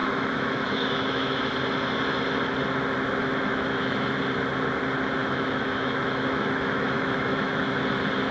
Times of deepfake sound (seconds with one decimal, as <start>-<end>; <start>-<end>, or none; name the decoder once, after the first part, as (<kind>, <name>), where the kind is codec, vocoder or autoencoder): 0.0-1.4 (autoencoder, DAC-VAE); 3.2-4.2; 5.2-7.6